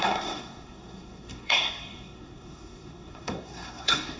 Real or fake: fake